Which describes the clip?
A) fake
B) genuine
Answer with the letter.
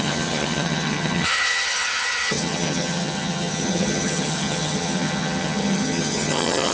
A